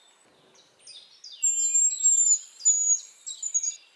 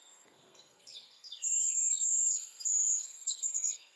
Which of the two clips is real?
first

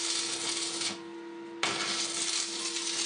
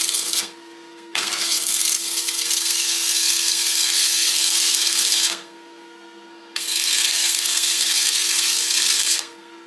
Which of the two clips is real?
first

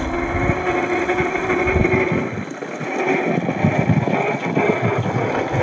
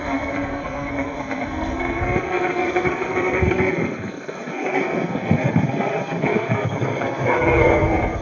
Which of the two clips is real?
first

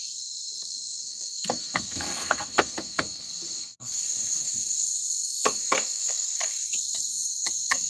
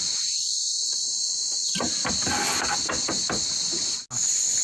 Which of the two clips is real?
second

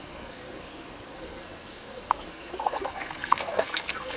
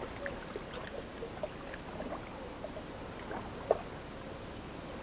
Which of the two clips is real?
second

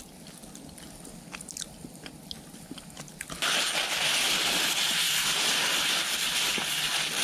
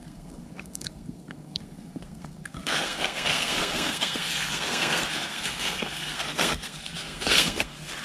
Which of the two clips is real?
first